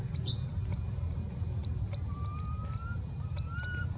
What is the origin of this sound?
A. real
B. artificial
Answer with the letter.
A